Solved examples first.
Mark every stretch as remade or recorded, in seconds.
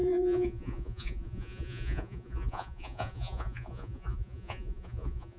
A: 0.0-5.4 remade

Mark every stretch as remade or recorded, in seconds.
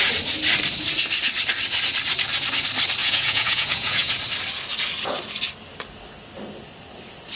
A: 0.0-3.0 recorded; 3.0-4.1 remade; 4.1-7.4 recorded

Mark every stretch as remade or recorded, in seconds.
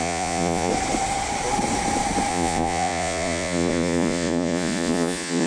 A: 0.0-0.7 remade; 0.7-2.3 recorded; 2.3-5.5 remade